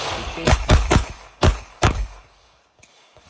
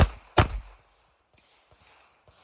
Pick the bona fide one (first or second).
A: second